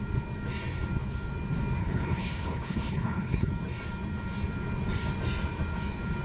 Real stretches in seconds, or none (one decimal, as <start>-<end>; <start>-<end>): 0.0-1.8; 3.5-6.2